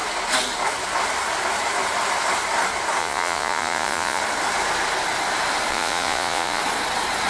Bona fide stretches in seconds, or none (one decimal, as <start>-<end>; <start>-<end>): 0.0-3.0; 4.2-5.7; 6.6-7.3